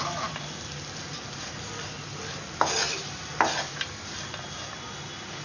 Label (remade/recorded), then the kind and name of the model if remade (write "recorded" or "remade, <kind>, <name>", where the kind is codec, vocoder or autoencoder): recorded